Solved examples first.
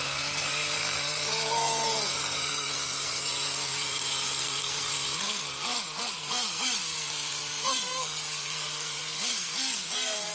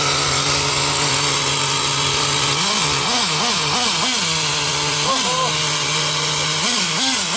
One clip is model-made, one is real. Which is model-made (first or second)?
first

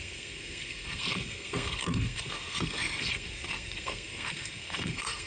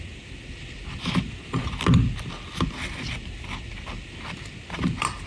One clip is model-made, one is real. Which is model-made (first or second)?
first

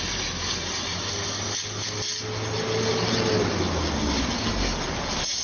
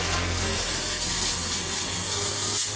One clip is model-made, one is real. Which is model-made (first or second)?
second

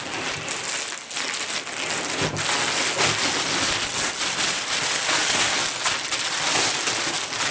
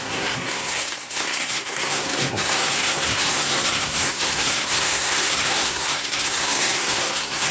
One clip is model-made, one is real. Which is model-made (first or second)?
second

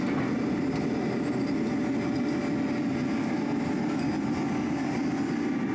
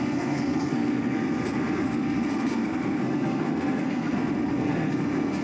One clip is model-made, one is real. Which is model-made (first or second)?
second